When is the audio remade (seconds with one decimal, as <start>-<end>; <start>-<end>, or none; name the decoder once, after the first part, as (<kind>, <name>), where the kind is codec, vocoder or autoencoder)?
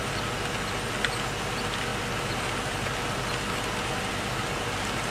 none